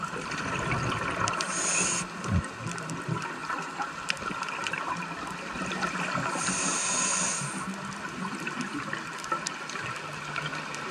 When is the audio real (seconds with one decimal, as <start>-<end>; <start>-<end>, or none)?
0.0-10.9